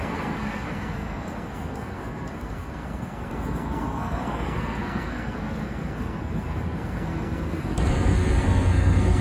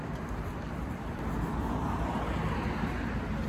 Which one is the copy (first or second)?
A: first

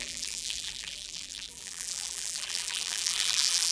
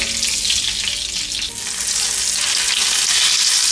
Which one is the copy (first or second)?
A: first